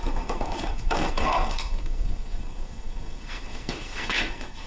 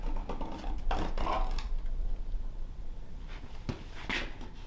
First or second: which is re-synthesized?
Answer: first